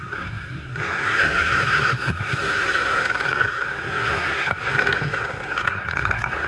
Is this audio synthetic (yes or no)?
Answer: yes